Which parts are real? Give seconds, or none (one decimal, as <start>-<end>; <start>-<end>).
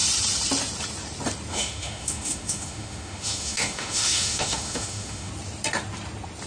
0.0-1.5; 5.3-6.5